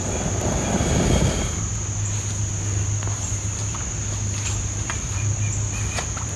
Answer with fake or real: real